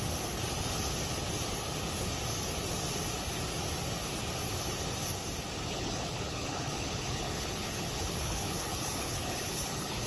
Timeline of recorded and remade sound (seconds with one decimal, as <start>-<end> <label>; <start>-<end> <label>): 0.0-5.7 recorded; 5.7-10.1 remade